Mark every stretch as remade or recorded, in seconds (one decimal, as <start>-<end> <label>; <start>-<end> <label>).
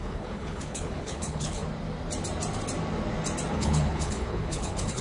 0.0-1.6 remade; 1.6-3.5 recorded; 3.5-5.0 remade